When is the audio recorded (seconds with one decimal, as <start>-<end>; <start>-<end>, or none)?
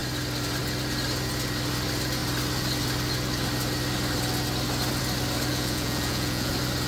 0.0-5.5; 6.5-6.9